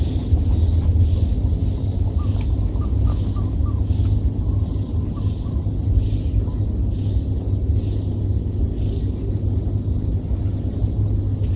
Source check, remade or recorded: recorded